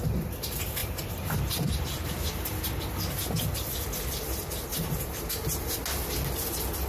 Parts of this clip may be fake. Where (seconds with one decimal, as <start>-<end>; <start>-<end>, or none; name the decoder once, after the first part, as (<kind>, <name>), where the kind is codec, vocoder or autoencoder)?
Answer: 0.8-2.1 (vocoder, BigVGAN v2); 4.7-5.8